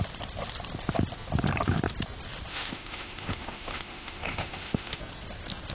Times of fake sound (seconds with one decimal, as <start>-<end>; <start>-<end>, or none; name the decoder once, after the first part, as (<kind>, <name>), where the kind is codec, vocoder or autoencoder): 2.5-5.0 (autoencoder, DAC-VAE)